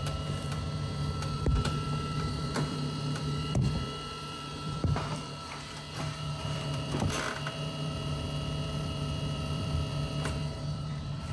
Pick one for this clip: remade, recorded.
remade